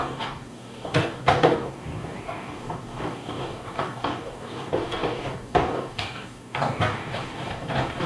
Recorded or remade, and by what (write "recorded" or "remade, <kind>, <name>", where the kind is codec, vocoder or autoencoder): remade, codec, DAC